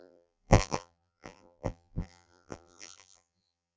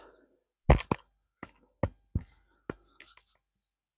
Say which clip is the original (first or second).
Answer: second